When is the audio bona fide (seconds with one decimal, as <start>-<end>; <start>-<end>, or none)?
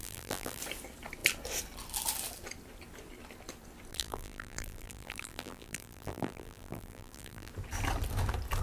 0.6-3.9; 7.5-8.6